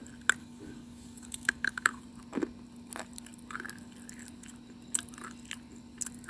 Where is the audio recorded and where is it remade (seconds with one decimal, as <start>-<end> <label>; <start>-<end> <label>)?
0.0-0.4 recorded; 0.4-2.0 remade; 2.0-6.3 recorded